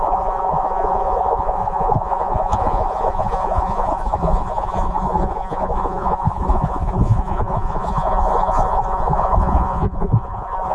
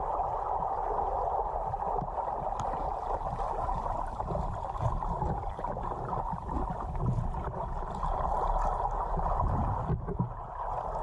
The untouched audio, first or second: second